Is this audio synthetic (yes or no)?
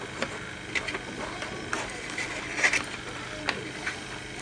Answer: no